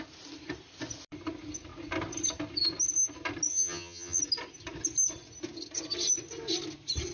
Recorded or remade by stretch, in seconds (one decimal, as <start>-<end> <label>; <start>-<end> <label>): 0.0-3.5 recorded; 3.5-4.2 remade; 4.2-7.1 recorded